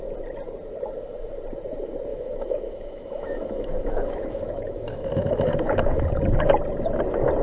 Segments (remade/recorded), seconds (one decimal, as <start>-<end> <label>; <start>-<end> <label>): 0.0-2.1 recorded; 2.1-6.0 remade; 6.0-7.4 recorded